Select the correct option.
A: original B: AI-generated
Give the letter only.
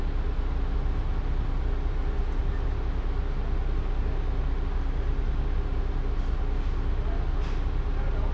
A